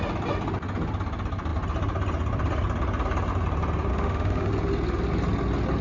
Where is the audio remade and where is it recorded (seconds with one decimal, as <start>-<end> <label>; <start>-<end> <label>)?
0.0-3.9 recorded; 3.9-4.5 remade; 4.5-5.8 recorded